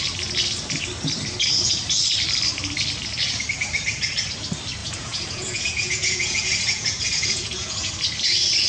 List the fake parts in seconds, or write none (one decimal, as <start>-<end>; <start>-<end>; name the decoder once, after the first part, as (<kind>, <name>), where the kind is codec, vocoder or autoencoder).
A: 4.8-7.9 (vocoder, Vocos)